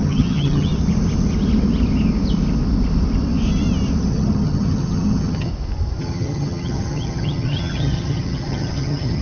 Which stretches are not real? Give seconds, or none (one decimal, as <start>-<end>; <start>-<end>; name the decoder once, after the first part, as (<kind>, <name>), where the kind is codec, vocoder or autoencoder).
0.0-0.7 (vocoder, HiFi-GAN); 4.0-5.5; 6.0-9.2